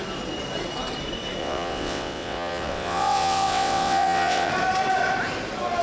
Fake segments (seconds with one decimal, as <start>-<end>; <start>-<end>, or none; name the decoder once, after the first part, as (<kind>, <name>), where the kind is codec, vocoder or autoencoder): 1.4-4.5 (vocoder, WaveNeXt)